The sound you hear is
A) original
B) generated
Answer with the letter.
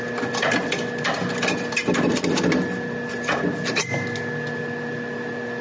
A